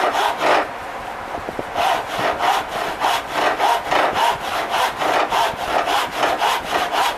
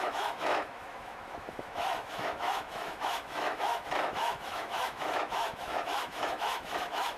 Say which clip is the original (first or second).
first